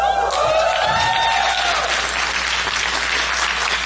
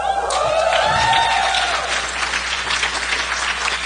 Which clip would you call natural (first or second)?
first